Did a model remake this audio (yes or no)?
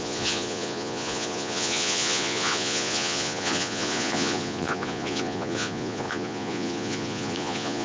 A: yes